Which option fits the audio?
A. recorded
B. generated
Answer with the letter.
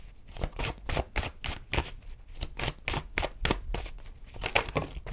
A